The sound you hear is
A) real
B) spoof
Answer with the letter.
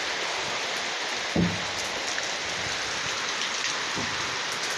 A